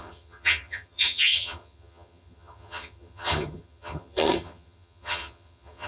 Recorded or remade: remade